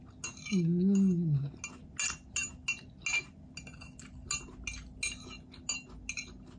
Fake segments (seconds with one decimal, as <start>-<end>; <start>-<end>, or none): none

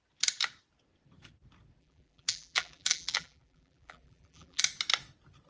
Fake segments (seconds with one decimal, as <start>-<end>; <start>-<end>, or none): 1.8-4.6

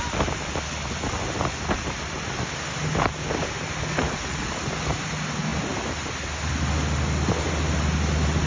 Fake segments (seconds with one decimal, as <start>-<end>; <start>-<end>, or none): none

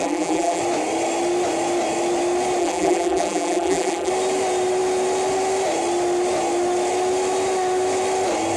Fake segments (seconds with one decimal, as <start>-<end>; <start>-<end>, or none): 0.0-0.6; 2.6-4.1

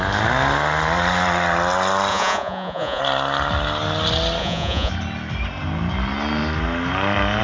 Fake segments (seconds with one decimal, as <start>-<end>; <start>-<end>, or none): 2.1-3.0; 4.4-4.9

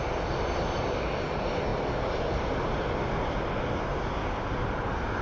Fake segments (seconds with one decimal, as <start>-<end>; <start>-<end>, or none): none

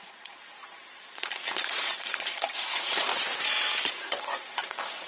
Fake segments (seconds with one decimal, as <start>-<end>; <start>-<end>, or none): 0.0-3.1; 3.9-5.1

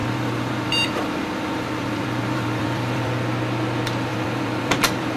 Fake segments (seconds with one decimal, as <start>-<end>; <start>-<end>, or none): 0.0-3.1; 4.1-5.2